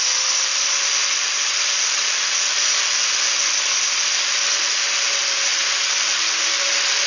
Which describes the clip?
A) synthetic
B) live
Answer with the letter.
B